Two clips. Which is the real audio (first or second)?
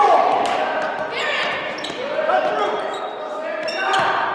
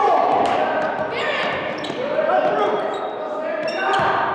first